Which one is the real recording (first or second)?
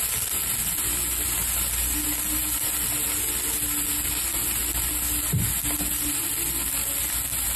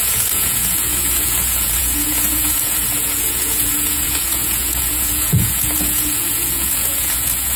first